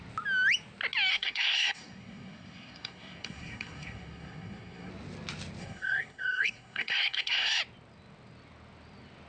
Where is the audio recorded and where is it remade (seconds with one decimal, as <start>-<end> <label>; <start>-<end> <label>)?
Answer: 0.0-1.1 recorded; 1.1-4.9 remade; 4.9-5.6 recorded; 5.6-7.6 remade; 7.6-9.3 recorded